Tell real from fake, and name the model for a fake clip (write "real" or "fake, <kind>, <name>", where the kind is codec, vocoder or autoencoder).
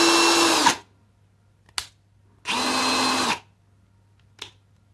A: real